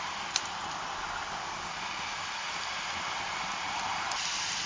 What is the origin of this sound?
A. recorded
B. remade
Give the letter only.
A